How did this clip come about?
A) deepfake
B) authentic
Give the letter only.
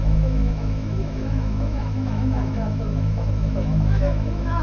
A